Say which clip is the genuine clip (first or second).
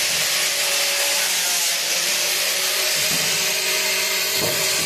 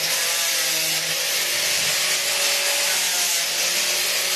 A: second